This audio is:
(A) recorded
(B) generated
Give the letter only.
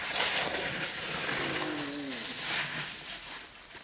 A